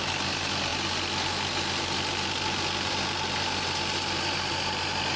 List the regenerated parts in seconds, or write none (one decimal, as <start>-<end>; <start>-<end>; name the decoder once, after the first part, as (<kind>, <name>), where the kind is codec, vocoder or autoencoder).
none